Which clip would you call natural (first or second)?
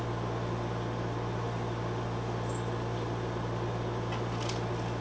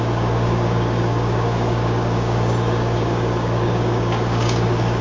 first